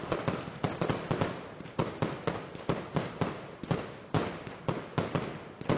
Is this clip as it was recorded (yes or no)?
yes